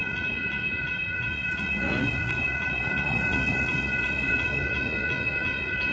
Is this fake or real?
fake